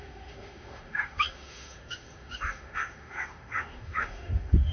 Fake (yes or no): yes